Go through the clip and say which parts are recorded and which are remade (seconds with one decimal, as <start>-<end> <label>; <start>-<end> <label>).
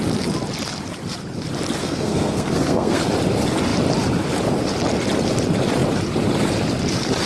0.0-1.8 recorded; 1.8-3.0 remade; 3.0-7.2 recorded